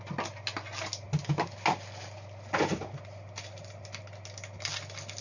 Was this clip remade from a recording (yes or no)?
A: no